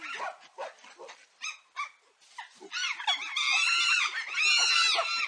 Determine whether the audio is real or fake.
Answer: real